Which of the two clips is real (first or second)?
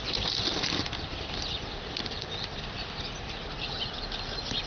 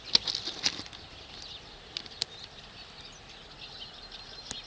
second